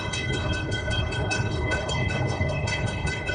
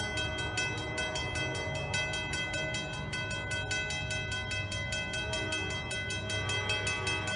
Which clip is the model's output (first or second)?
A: first